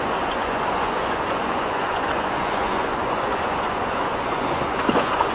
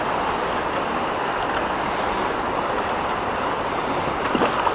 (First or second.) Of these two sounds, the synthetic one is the first